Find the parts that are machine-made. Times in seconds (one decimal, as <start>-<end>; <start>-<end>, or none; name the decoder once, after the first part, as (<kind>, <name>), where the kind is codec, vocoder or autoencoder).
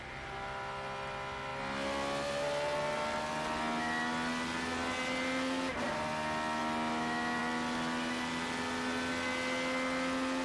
none